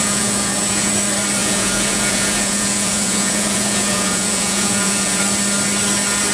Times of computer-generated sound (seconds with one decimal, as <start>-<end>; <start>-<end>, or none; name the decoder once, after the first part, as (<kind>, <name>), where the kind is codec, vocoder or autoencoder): 0.0-0.9 (vocoder, Vocos); 1.4-5.2